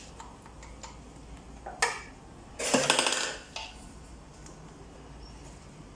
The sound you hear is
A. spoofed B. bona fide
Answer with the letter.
B